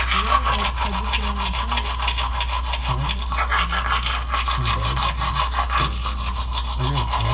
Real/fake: real